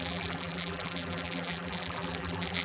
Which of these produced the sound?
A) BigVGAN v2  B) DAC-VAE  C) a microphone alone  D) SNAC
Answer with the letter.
A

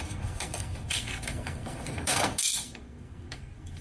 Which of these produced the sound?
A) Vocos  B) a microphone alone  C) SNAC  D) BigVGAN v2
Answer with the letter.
C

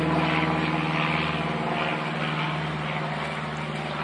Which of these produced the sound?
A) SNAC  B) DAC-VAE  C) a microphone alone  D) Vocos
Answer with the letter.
C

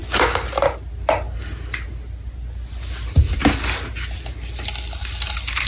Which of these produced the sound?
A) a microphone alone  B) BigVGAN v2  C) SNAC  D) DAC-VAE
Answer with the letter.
A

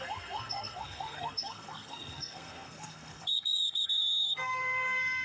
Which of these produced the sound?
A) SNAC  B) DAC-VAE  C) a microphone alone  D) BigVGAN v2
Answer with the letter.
A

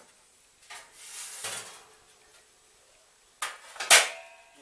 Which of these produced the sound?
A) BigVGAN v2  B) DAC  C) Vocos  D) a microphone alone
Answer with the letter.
D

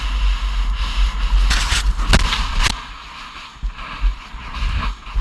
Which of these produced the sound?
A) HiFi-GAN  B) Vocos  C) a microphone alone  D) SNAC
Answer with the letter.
C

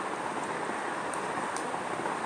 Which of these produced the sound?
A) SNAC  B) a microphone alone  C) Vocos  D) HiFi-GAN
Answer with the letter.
B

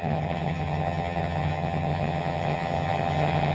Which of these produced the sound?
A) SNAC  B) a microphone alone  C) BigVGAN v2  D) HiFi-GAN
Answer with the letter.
D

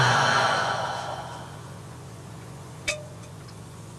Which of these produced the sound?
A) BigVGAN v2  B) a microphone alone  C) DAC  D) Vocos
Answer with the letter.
D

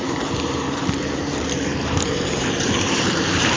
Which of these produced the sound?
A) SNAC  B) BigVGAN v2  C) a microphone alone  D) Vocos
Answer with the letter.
B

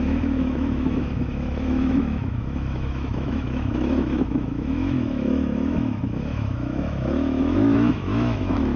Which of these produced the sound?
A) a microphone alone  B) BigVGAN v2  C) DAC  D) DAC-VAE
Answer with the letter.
D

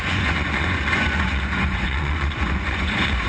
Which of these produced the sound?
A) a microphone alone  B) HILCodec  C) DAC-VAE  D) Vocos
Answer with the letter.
D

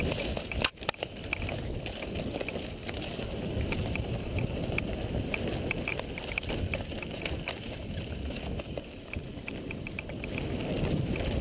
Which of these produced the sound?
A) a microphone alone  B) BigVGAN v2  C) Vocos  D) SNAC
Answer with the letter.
A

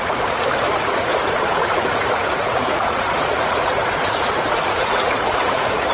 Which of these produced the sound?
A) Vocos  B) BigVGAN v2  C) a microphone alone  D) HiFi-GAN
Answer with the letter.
A